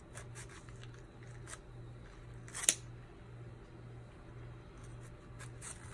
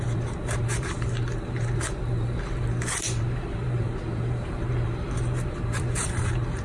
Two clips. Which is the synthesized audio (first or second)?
second